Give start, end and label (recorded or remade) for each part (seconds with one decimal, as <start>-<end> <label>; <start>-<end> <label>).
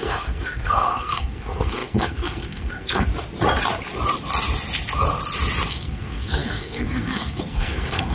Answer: 0.0-3.1 remade; 3.1-5.7 recorded; 5.7-8.1 remade